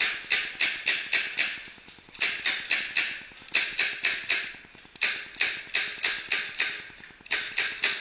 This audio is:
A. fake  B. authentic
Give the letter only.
B